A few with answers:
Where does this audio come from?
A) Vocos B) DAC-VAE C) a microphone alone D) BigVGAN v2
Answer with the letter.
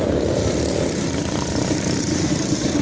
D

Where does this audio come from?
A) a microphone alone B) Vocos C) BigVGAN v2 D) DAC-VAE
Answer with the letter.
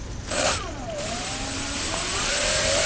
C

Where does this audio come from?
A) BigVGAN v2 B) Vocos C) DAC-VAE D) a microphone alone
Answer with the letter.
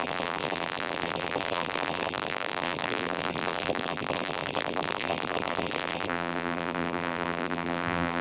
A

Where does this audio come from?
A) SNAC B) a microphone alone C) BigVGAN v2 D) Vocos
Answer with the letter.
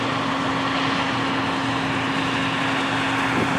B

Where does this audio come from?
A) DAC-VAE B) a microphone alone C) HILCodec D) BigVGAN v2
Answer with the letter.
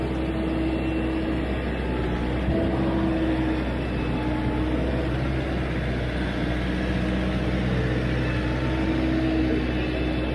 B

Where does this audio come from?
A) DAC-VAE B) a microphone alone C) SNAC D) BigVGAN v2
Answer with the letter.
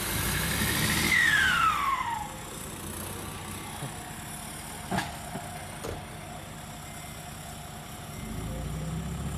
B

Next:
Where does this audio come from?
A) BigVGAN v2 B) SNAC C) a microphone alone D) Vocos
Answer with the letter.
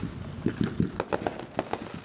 C